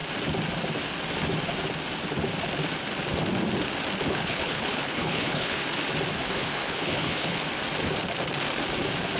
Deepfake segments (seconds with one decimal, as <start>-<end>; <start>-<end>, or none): 4.1-5.6; 6.3-7.4